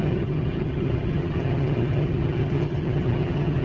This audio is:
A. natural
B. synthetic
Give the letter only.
B